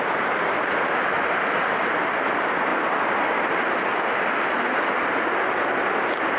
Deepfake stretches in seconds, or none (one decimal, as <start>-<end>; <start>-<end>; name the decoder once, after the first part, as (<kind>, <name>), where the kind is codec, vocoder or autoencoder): none